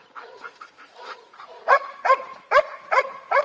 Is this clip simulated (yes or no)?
yes